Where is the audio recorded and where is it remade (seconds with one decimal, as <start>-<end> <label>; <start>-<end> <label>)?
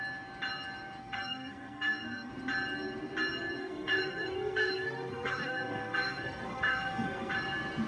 0.0-1.0 recorded; 1.0-2.3 remade; 2.3-3.6 recorded; 3.6-7.3 remade; 7.3-7.9 recorded